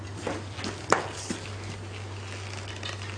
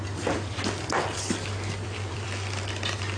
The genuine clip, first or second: first